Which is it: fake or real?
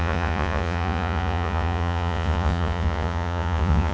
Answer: fake